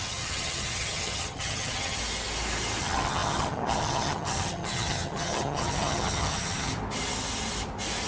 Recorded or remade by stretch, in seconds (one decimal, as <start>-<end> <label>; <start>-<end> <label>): 0.0-2.0 remade; 2.0-2.8 recorded; 2.8-6.7 remade; 6.7-8.1 recorded